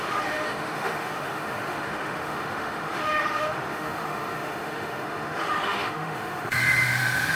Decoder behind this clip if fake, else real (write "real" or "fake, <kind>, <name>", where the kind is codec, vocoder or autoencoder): fake, autoencoder, DAC-VAE